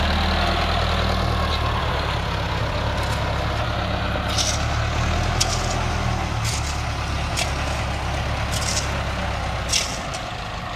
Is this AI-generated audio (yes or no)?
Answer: no